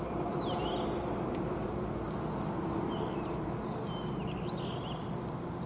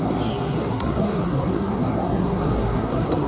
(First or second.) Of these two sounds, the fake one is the second